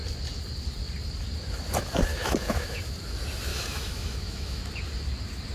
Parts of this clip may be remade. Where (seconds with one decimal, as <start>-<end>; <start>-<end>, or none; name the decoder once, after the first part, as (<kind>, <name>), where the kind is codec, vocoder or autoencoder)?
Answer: 2.1-2.8 (autoencoder, DAC-VAE); 3.5-4.7